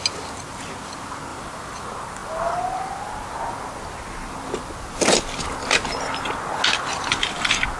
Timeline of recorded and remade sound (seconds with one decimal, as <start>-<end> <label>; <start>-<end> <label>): 0.0-1.3 recorded; 1.3-1.8 remade; 1.8-7.8 recorded